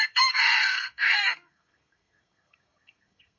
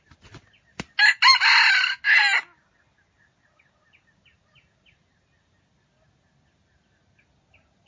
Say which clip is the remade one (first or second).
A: first